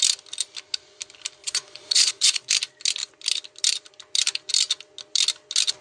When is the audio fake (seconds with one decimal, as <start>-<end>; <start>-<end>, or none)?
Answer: 1.4-2.5